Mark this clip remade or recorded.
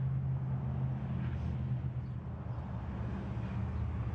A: recorded